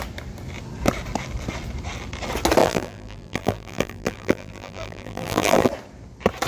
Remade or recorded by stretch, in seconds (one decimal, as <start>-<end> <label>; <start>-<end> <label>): 0.0-2.6 recorded; 2.6-5.7 remade; 5.7-6.5 recorded